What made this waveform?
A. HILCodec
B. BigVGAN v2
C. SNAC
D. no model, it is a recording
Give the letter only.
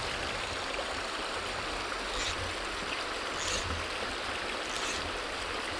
D